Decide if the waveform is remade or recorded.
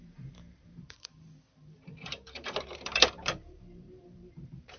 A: remade